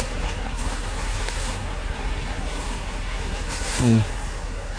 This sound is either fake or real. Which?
fake